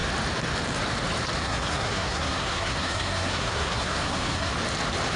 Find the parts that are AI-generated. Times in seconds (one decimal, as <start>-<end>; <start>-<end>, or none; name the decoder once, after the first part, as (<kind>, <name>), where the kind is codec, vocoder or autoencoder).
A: 1.4-4.5 (codec, SNAC)